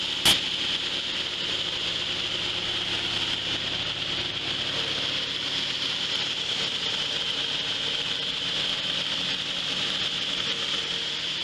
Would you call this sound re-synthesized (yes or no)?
no